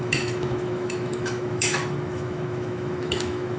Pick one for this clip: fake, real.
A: fake